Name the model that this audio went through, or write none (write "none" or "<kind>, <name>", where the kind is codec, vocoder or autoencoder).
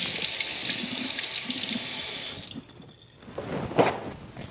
none